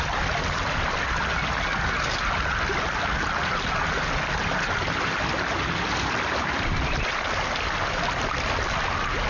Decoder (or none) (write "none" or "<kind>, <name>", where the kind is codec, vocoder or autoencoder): none